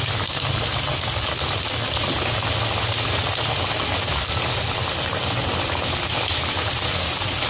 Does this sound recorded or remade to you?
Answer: recorded